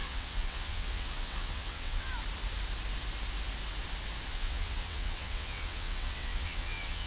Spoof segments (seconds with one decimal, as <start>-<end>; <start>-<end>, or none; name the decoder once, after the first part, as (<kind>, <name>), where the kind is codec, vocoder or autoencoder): 0.0-2.1 (vocoder, WaveNeXt); 4.3-7.1